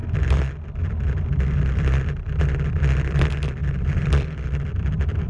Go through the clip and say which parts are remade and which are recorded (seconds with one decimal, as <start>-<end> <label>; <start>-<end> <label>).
0.0-5.3 remade